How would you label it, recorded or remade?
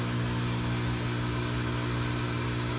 recorded